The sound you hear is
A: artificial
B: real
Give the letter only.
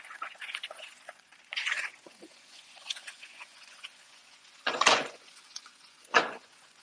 A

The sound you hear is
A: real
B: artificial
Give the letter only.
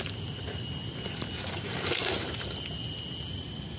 A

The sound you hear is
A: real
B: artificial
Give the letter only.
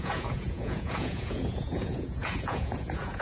B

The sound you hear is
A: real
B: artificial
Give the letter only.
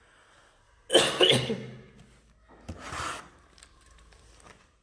A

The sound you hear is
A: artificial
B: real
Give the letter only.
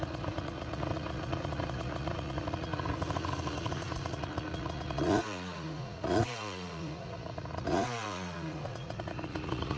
A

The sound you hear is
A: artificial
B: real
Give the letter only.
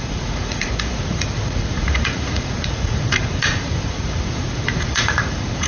A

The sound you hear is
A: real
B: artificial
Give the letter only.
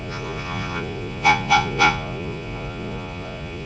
B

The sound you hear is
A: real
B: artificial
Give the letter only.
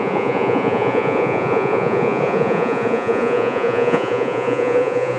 B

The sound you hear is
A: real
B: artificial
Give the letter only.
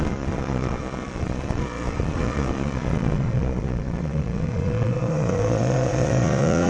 B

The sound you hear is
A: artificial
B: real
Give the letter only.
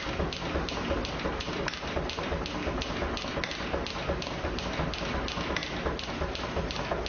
B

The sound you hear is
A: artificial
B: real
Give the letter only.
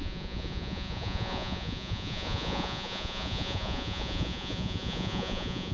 A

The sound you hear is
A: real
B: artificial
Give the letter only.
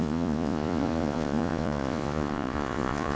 B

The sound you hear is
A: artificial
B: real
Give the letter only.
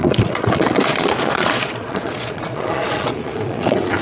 A